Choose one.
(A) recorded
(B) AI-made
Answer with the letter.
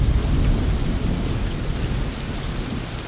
A